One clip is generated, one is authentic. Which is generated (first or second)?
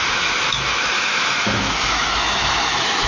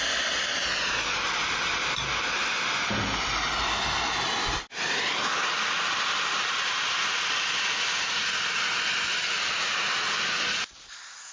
first